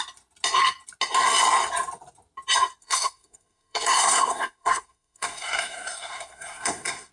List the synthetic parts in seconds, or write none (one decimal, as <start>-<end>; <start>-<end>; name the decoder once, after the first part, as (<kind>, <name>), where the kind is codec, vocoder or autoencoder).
2.8-7.1 (codec, SNAC)